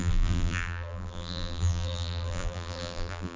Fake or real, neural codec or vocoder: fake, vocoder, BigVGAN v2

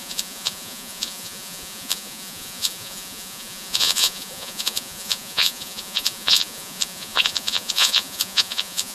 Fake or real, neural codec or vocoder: fake, vocoder, Vocos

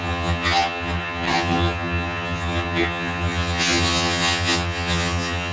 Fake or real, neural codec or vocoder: fake, vocoder, HiFi-GAN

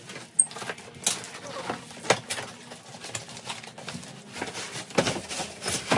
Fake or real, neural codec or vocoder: real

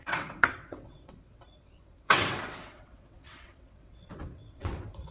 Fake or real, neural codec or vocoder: fake, vocoder, WaveNeXt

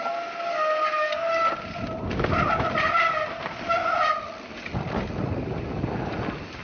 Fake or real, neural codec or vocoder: real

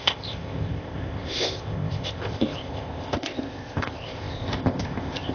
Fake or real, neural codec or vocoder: fake, codec, ZipCodec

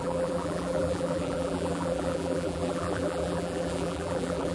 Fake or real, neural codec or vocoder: fake, vocoder, BigVGAN v2